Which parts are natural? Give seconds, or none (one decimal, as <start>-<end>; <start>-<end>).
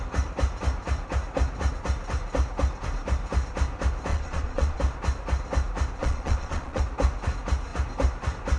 0.0-4.1; 4.8-6.0; 6.8-8.6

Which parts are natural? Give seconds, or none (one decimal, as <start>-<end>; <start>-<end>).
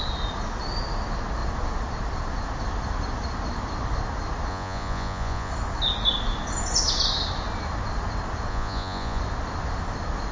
0.0-4.5; 5.5-8.5; 9.2-10.3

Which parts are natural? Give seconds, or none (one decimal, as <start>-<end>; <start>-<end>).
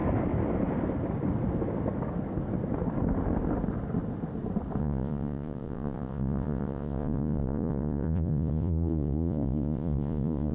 0.0-4.8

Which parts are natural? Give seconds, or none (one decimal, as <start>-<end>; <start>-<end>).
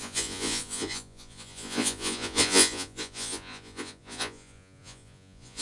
none